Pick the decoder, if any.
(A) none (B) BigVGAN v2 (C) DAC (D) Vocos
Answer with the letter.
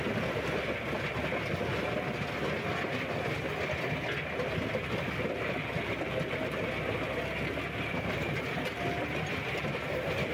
A